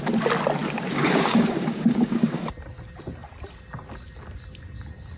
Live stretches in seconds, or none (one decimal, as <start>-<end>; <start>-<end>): 0.0-0.6; 2.4-5.2